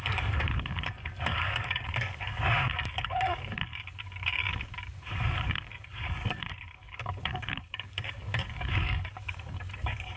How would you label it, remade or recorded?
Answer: remade